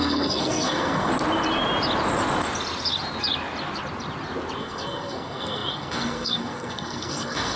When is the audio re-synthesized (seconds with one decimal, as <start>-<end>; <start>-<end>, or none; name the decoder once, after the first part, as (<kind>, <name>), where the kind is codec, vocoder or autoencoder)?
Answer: 0.0-1.1 (codec, SNAC); 4.6-7.6